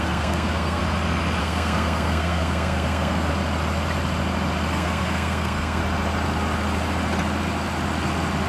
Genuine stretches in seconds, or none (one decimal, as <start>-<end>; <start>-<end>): 0.8-1.4; 3.3-4.7; 5.8-8.5

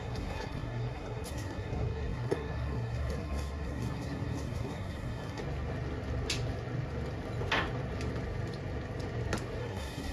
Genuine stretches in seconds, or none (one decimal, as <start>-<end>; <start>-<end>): 5.4-9.6

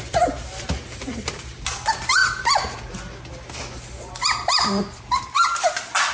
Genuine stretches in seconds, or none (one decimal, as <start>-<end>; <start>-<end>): 0.0-6.1

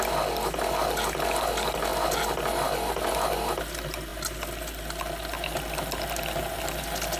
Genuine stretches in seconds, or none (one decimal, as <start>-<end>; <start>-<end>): 0.0-7.2

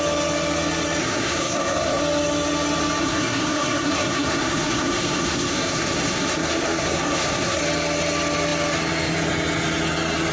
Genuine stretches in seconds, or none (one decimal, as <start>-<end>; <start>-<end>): 0.0-1.0; 2.0-3.0; 7.6-10.3

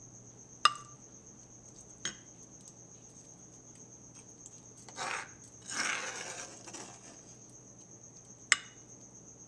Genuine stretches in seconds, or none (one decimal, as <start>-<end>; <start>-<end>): 0.0-9.5

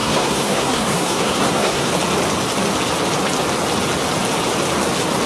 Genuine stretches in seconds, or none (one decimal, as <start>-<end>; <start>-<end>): 1.9-5.3

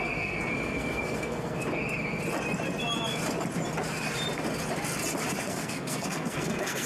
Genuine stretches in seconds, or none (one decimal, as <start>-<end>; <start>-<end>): 1.6-5.4